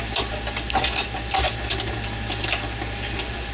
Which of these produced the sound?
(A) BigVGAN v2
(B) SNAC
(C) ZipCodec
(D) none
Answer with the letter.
D